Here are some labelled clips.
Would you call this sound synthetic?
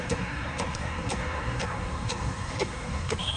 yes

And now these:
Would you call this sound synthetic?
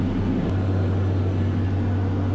no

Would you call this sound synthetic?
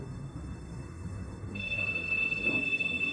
yes